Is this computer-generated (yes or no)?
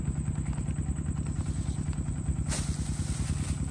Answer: no